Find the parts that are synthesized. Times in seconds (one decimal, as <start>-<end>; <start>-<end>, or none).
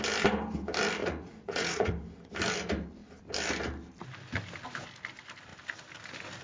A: 1.0-1.9